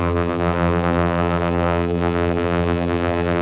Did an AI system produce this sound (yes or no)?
yes